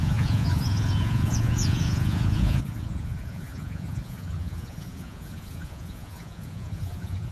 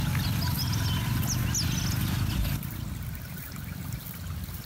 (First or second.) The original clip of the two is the second